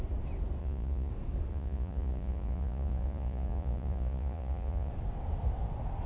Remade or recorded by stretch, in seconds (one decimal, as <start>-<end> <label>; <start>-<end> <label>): 0.0-0.6 recorded; 0.6-1.1 remade; 1.1-1.5 recorded; 1.5-4.9 remade; 4.9-6.1 recorded